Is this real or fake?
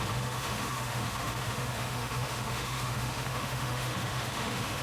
fake